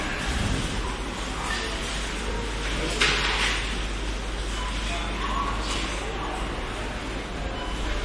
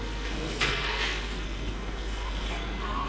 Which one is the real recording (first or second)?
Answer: first